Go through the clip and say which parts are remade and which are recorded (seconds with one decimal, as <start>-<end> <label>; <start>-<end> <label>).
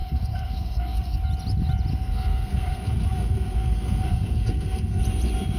0.0-1.2 remade; 1.2-1.9 recorded; 1.9-5.0 remade; 5.0-5.6 recorded